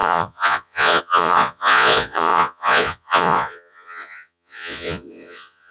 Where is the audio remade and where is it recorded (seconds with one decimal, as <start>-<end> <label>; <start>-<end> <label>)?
0.0-5.7 remade